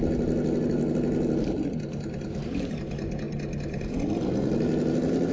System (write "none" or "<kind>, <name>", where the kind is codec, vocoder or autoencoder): none